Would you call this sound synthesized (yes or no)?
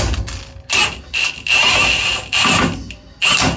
no